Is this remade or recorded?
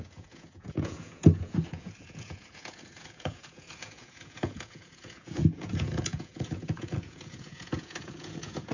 remade